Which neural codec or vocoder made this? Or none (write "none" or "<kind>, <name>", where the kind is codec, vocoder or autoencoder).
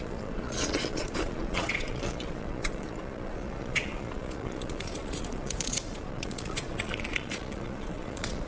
vocoder, Vocos